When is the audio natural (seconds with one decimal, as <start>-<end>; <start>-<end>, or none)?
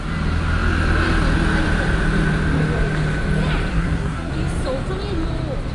0.0-3.7; 4.3-5.7